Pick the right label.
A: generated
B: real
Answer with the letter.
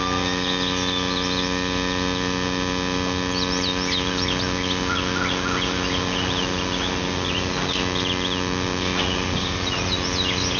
B